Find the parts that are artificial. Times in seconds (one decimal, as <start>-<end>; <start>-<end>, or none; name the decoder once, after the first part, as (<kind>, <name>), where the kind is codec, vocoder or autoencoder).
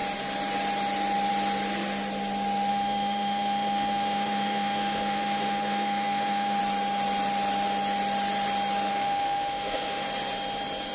2.7-6.6 (autoencoder, DAC-VAE); 8.9-10.0